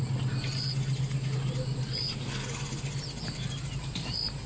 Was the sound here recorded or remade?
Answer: recorded